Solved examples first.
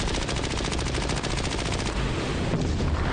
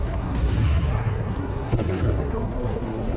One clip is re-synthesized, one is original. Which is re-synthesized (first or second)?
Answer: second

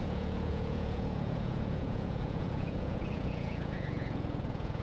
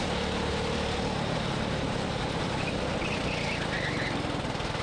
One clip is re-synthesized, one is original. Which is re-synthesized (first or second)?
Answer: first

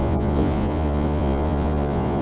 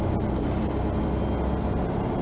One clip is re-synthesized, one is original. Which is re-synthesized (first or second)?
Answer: first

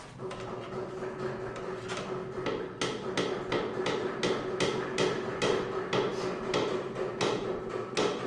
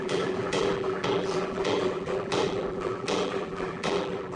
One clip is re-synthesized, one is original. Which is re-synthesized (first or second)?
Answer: second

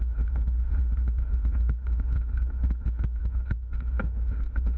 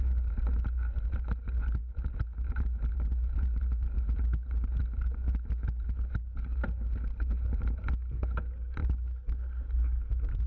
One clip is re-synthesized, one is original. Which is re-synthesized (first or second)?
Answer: first